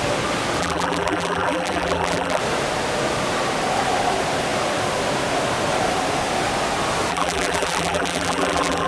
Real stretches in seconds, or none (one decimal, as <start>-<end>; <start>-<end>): 0.0-0.6; 2.4-7.1